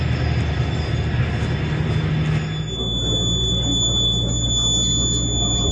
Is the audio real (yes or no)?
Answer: yes